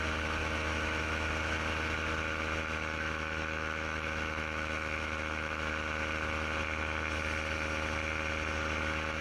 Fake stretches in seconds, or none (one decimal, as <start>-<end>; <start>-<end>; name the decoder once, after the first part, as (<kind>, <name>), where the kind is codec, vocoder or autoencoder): 0.4-1.3 (autoencoder, DAC-VAE); 2.6-5.7